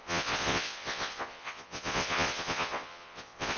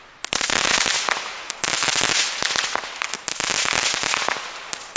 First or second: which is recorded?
second